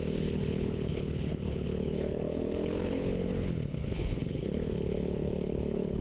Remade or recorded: remade